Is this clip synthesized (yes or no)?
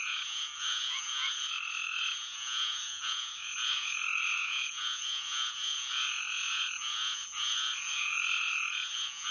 yes